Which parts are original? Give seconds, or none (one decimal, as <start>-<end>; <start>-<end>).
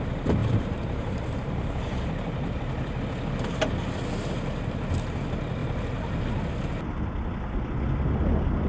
0.0-0.4; 3.0-5.6; 6.2-8.7